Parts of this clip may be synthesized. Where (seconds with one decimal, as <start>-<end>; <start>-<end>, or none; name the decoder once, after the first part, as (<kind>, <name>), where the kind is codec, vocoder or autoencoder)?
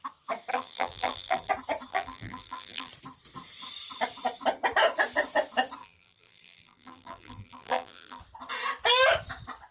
0.5-1.5 (vocoder, BigVGAN v2); 1.9-2.9; 5.8-8.2